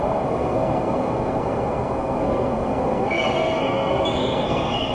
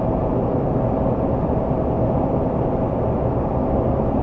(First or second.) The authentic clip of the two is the second